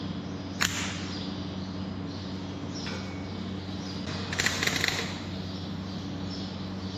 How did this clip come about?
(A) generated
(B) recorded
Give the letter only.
B